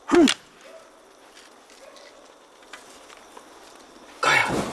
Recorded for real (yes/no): yes